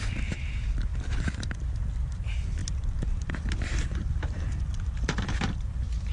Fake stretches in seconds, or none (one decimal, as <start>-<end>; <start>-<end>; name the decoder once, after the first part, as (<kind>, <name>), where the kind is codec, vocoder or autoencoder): 0.9-1.5 (vocoder, BigVGAN v2); 2.6-6.1